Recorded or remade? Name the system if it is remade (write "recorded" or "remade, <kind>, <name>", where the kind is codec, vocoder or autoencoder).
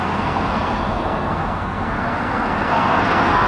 remade, codec, SNAC